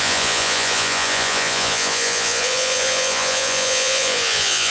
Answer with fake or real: fake